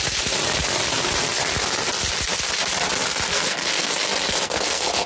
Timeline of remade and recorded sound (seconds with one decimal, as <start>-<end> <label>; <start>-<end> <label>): 0.0-3.3 recorded; 3.3-3.9 remade; 3.9-4.3 recorded; 4.3-5.1 remade